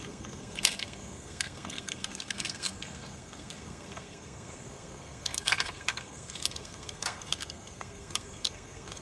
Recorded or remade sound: remade